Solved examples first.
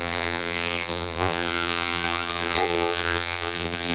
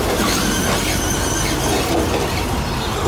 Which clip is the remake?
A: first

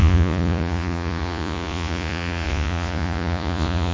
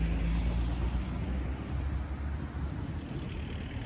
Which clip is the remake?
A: first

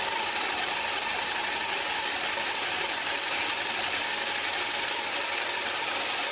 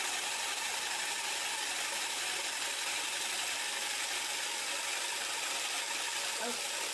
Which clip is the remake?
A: first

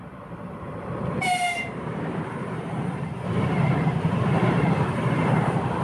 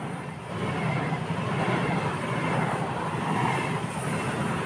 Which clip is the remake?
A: first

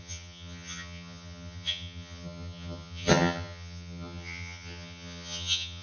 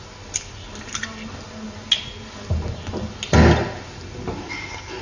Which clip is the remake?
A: first